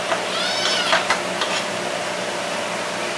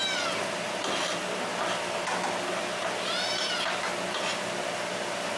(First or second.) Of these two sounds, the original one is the second